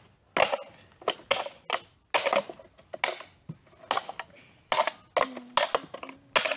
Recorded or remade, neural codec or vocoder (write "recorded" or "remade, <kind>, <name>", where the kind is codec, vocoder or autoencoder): recorded